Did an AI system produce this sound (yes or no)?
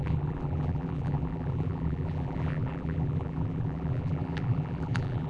yes